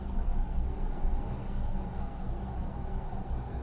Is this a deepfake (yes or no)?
yes